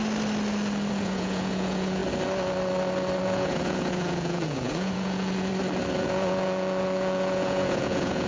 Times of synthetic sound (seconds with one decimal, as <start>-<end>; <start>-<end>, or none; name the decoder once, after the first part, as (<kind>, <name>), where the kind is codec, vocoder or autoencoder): 0.9-2.0 (vocoder, Vocos); 3.2-5.5; 6.0-8.3